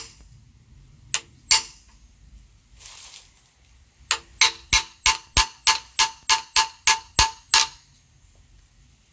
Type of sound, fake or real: real